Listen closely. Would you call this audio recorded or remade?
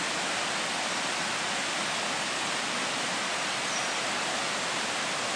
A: recorded